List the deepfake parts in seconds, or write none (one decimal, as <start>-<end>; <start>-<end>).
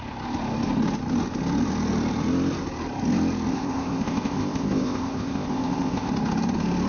3.5-6.1